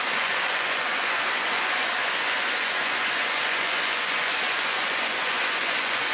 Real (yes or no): no